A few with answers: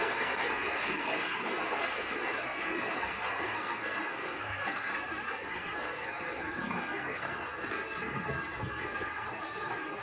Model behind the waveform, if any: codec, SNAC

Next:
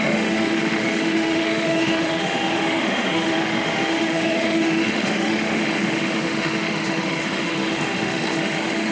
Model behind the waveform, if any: autoencoder, DAC-VAE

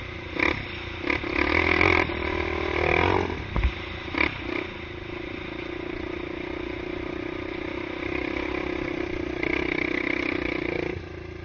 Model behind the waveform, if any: none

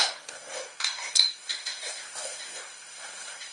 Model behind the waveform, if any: codec, SNAC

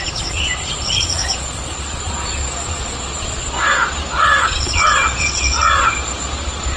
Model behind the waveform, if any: vocoder, Vocos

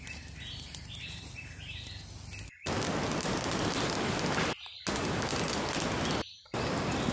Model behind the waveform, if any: none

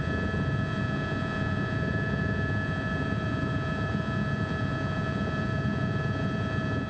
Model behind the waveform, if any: vocoder, Vocos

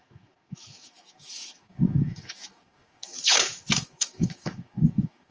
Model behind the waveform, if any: autoencoder, DAC-VAE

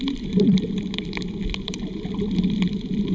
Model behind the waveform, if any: none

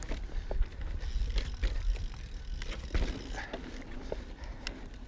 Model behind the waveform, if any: none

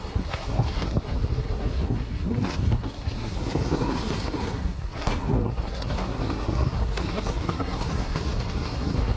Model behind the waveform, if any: codec, SNAC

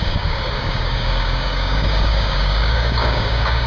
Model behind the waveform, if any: codec, DAC